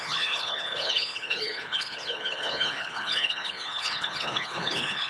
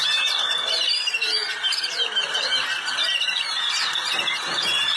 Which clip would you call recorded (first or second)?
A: second